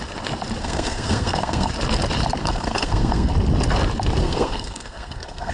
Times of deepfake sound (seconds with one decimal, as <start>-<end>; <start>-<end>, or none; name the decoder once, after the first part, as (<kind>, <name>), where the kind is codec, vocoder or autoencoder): 0.6-1.7 (codec, SNAC); 2.4-3.3; 4.2-5.5